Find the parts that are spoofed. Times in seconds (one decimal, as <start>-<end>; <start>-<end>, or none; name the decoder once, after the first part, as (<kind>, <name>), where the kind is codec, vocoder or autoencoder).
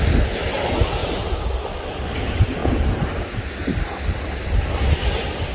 2.6-3.9 (vocoder, BigVGAN v2)